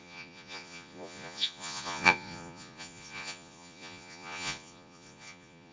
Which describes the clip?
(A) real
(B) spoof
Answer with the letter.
B